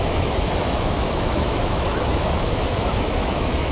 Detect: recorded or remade remade